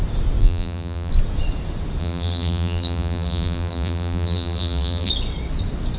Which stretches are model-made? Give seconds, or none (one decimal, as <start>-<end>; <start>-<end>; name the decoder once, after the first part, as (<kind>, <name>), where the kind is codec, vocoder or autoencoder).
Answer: 0.4-1.1 (vocoder, BigVGAN v2); 2.0-5.1